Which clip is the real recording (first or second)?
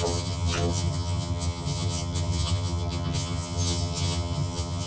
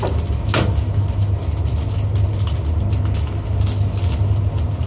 second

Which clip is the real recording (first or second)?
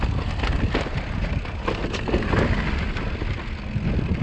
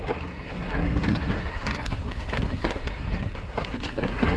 first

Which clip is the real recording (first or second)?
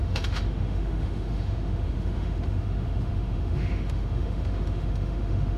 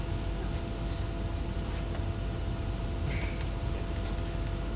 second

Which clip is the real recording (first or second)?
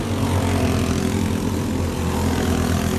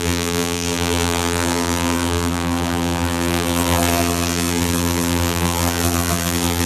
first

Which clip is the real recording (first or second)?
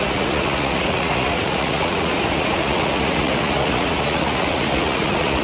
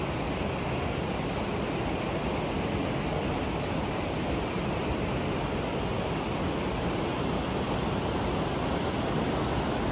second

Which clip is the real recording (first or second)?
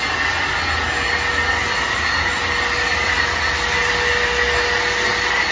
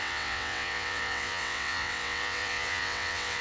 first